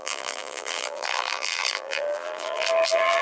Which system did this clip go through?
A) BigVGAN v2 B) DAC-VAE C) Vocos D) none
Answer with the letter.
A